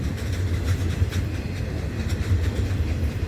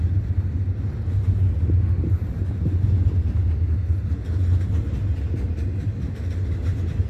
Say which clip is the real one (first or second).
second